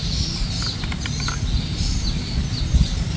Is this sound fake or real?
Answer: real